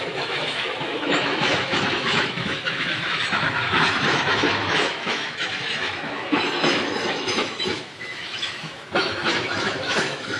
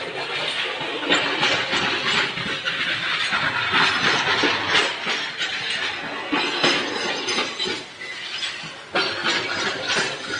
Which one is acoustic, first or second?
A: second